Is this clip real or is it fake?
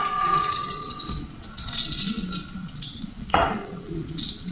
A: fake